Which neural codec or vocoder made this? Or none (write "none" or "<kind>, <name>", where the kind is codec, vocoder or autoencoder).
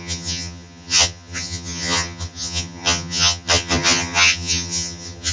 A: vocoder, HiFi-GAN